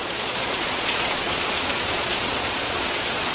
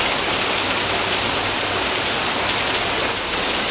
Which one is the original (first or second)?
second